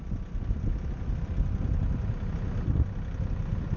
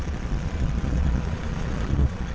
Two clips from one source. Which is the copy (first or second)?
second